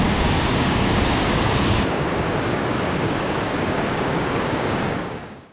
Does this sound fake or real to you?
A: fake